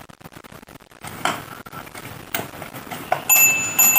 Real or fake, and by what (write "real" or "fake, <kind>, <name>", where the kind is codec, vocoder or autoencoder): real